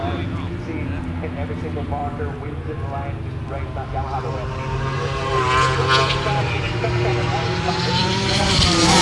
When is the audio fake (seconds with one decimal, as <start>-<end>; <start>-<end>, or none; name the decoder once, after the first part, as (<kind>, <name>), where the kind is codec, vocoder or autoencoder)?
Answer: 1.5-2.0 (vocoder, BigVGAN v2); 6.6-7.1; 7.8-9.0